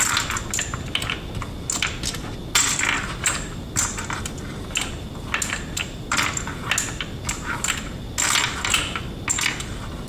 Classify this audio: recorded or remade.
recorded